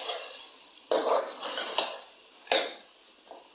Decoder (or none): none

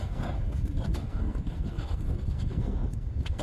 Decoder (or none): codec, SNAC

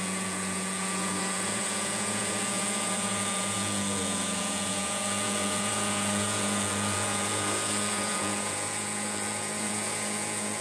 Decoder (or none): vocoder, Vocos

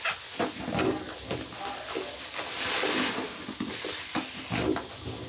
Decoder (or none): none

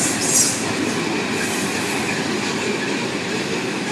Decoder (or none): none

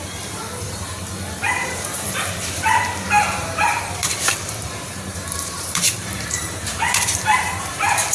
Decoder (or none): vocoder, BigVGAN v2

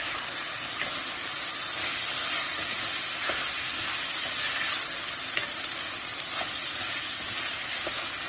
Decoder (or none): none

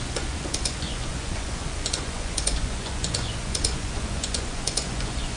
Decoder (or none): vocoder, Vocos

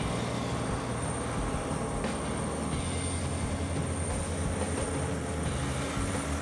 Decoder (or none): none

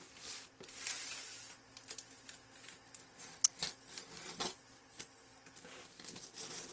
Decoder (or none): none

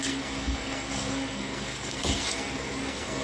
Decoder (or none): codec, SNAC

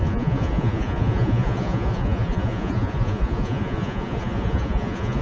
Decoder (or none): vocoder, Vocos